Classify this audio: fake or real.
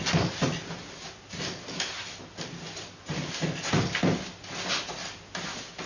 real